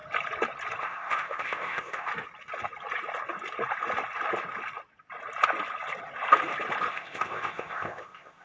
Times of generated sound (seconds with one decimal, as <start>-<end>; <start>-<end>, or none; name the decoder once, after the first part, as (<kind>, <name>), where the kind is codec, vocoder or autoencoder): 0.8-2.1 (codec, ZipCodec); 6.9-8.4